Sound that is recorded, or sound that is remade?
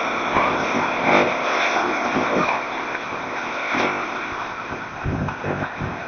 remade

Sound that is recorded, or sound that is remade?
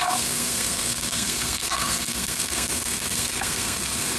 remade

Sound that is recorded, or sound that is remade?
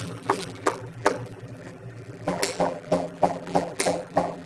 remade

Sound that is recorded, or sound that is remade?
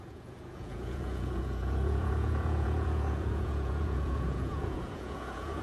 remade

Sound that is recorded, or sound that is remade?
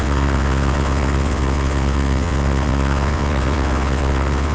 remade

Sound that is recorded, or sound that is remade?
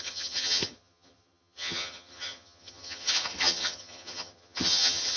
remade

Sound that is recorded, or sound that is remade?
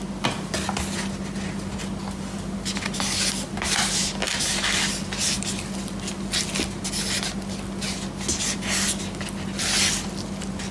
recorded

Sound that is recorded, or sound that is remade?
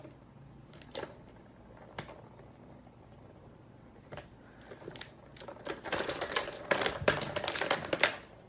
recorded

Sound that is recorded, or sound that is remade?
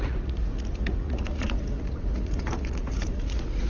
remade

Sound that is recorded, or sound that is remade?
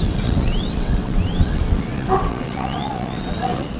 remade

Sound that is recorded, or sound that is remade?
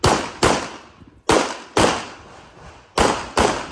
recorded